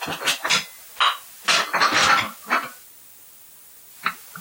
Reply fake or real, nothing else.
real